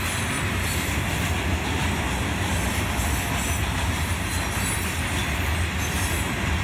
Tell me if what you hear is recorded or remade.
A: recorded